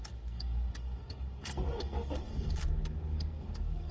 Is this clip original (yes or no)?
no